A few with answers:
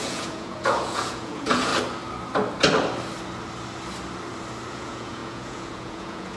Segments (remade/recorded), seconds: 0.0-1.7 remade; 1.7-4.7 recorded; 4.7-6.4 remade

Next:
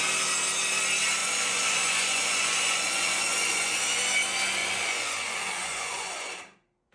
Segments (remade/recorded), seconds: 0.0-1.2 recorded; 1.2-4.0 remade; 4.0-4.6 recorded; 4.6-6.4 remade; 6.4-6.9 recorded

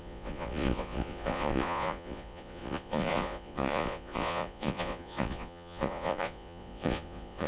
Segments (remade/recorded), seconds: 0.0-7.5 remade

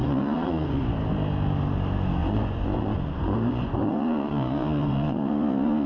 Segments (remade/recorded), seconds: 0.0-0.8 remade; 0.8-2.2 recorded; 2.2-5.9 remade